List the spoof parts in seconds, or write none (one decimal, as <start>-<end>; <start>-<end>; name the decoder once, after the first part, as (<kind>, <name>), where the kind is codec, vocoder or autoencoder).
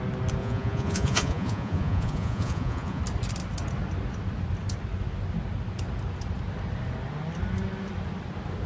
0.4-3.0 (vocoder, Vocos)